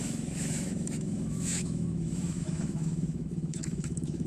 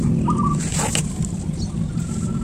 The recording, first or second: second